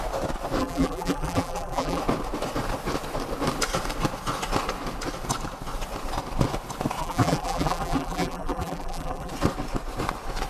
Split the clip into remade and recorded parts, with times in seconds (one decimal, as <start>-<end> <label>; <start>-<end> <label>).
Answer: 0.0-0.6 recorded; 0.6-2.0 remade; 2.0-7.0 recorded; 7.0-9.3 remade; 9.3-10.5 recorded